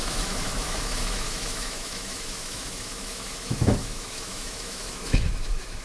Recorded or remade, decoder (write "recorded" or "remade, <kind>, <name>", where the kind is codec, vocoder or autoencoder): remade, autoencoder, DAC-VAE